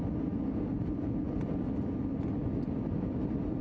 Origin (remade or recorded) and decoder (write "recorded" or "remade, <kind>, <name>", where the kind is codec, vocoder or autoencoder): recorded